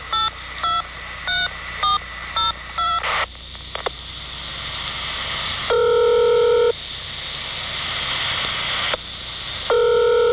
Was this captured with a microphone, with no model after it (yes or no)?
yes